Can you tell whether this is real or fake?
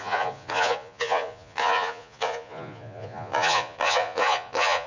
fake